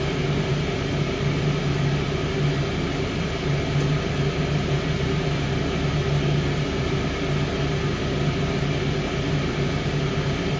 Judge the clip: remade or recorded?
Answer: recorded